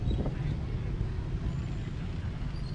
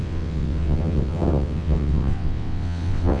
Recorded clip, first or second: first